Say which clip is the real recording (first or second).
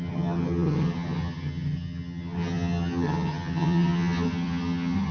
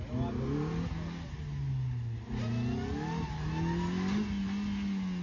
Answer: second